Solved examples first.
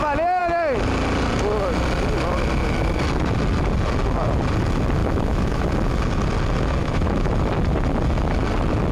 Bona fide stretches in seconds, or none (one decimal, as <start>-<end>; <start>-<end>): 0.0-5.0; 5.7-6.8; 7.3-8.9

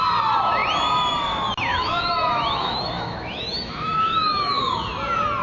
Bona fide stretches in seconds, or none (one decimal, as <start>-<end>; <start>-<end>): 0.0-1.7; 4.9-5.4

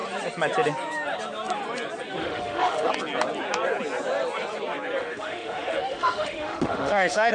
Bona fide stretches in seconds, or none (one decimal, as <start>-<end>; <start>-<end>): 0.0-2.2; 2.9-5.0